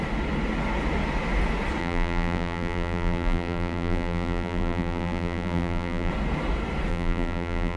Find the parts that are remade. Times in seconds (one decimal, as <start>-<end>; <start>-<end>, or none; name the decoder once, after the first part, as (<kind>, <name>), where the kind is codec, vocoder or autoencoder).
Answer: 1.8-6.1 (vocoder, BigVGAN v2); 6.9-7.8